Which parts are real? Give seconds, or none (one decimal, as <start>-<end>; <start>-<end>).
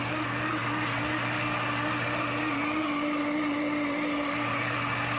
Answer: 0.0-5.2